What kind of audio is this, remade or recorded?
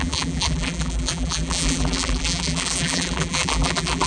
remade